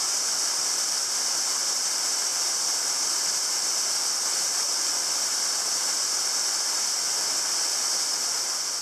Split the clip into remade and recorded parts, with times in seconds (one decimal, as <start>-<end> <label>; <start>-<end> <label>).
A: 0.0-8.8 recorded